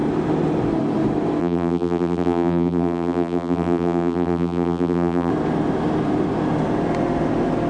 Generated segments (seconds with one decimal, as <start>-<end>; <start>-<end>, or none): 1.4-5.3